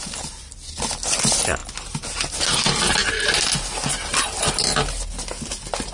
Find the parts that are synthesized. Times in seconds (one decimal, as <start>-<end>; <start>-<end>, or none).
none